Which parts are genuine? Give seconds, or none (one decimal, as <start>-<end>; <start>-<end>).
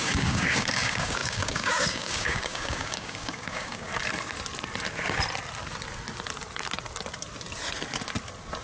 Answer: 3.9-8.6